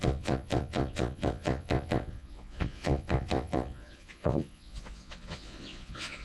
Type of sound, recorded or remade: remade